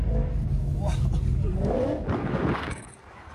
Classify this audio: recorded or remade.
remade